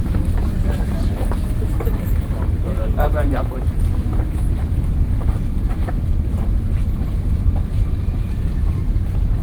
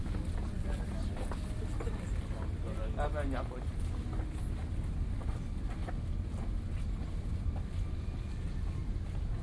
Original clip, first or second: second